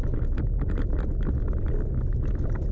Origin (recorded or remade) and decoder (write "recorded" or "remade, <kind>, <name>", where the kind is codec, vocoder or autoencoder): recorded